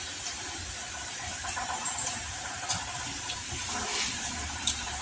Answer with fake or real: fake